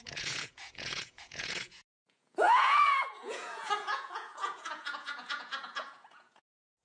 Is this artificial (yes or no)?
yes